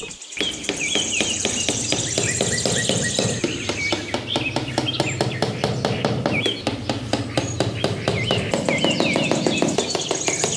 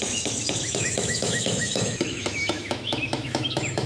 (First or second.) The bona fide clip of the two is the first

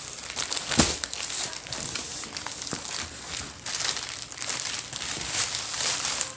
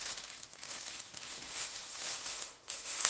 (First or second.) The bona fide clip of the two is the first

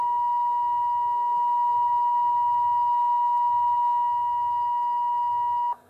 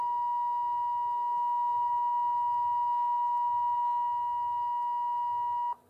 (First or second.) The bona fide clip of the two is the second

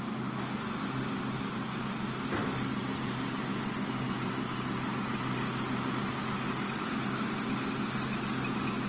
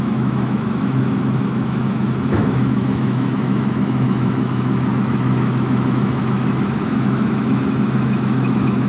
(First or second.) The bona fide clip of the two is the first